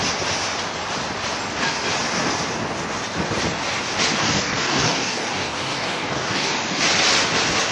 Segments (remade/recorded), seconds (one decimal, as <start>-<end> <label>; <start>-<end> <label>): 0.0-4.2 recorded; 4.2-6.8 remade; 6.8-7.7 recorded